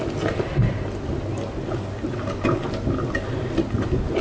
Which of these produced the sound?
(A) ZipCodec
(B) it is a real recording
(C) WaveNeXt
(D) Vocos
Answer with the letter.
B